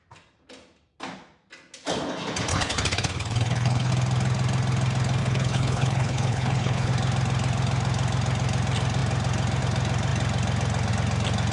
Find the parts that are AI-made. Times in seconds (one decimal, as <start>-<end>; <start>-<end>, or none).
2.5-3.9; 5.2-6.9

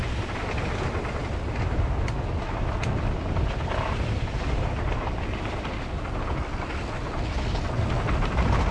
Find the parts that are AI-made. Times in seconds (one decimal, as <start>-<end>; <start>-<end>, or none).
none

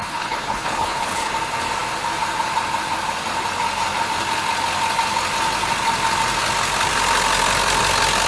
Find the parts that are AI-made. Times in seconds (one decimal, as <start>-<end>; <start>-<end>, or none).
0.0-1.3

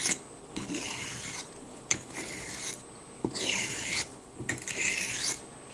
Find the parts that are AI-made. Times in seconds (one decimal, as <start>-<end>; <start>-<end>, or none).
0.4-0.9; 1.6-2.5; 3.2-4.5

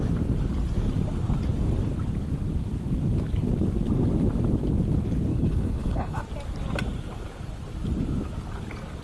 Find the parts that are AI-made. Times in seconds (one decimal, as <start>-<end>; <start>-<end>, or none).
5.3-6.2

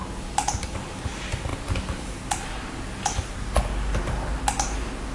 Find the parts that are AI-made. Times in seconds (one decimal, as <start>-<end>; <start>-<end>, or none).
none